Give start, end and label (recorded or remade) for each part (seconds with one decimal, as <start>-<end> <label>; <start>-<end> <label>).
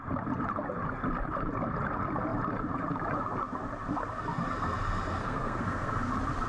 0.0-5.2 recorded; 5.2-5.9 remade; 5.9-6.5 recorded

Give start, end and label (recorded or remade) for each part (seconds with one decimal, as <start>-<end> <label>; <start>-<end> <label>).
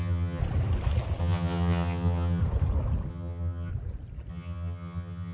0.0-0.4 remade; 0.4-1.2 recorded; 1.2-2.4 remade; 2.4-3.1 recorded; 3.1-3.7 remade; 3.7-4.3 recorded; 4.3-5.3 remade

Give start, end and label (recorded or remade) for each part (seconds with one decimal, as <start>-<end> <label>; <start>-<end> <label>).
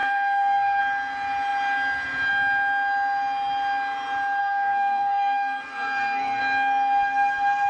0.0-0.8 remade; 0.8-4.4 recorded; 4.4-6.4 remade; 6.4-7.7 recorded